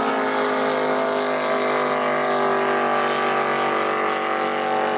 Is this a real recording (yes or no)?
yes